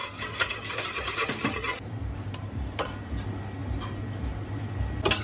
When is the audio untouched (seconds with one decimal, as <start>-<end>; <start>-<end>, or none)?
3.1-5.2

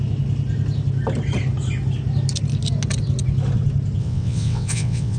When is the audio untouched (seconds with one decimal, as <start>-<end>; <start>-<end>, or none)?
0.0-4.0

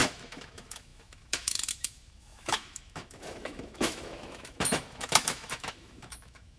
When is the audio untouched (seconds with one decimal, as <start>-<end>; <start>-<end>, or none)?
none

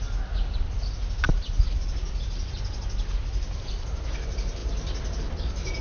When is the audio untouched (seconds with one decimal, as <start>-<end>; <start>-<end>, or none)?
0.0-5.8

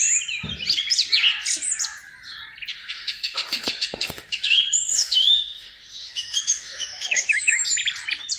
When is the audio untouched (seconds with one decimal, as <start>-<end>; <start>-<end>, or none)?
0.0-2.7; 7.6-8.4

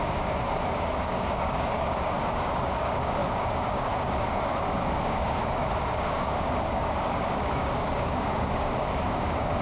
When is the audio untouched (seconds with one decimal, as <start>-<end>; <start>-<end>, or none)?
none

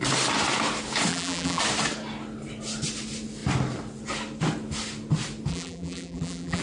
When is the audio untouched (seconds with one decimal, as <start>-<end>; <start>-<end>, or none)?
0.0-1.1; 1.6-5.5